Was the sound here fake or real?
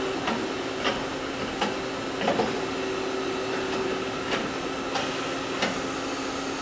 real